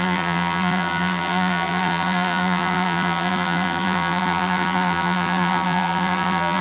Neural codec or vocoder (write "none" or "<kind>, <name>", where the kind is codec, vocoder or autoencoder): vocoder, BigVGAN v2